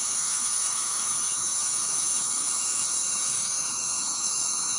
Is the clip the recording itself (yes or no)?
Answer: no